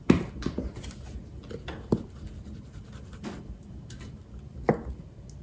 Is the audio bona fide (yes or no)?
yes